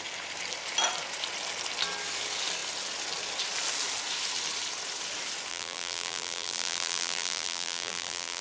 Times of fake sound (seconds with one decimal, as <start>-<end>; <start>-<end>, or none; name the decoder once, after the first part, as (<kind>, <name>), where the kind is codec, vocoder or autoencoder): 5.5-8.4 (vocoder, BigVGAN v2)